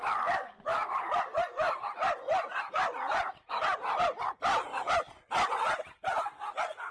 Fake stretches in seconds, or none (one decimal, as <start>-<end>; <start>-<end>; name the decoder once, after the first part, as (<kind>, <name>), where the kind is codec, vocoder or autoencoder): none